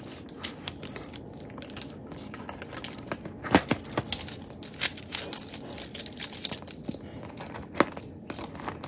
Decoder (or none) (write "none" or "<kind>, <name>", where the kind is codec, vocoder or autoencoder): none